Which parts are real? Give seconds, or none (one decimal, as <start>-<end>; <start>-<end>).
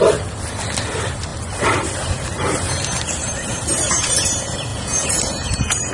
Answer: 0.0-4.7